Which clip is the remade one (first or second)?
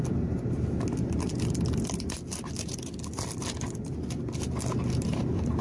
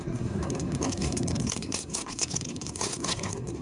second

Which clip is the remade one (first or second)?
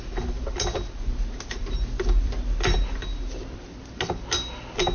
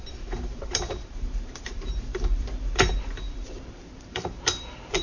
second